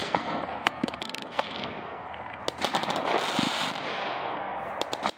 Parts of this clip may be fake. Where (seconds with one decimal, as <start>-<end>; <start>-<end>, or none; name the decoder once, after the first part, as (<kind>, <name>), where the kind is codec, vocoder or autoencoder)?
0.0-2.4 (codec, SNAC); 3.9-4.7